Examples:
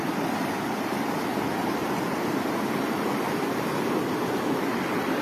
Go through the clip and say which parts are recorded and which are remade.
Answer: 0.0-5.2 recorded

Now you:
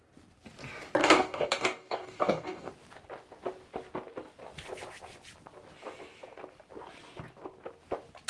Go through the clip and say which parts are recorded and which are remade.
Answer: 0.0-1.0 recorded; 1.0-2.7 remade; 2.7-8.3 recorded

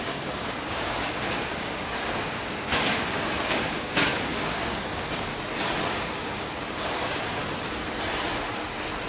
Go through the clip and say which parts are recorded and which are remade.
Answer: 0.0-5.3 remade; 5.3-6.0 recorded; 6.0-7.4 remade; 7.4-9.1 recorded